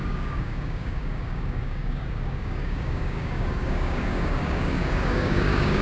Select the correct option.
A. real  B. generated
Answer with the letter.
B